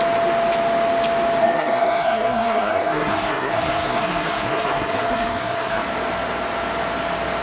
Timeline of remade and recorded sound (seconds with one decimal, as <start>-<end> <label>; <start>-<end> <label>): 0.0-1.4 recorded; 1.4-5.8 remade; 5.8-7.4 recorded